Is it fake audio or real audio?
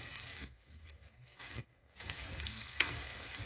fake